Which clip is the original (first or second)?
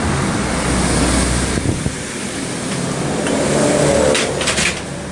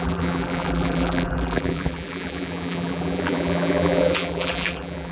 first